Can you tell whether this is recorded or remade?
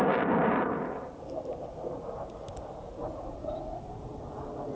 recorded